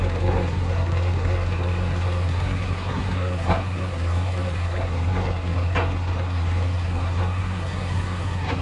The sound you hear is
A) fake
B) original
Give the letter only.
A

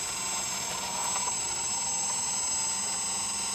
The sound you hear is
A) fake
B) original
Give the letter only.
B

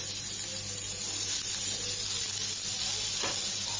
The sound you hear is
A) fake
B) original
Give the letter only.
B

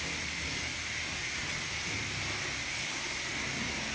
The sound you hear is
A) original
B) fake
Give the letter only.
A